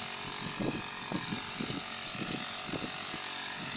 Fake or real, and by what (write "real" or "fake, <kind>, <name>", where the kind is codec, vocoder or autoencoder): real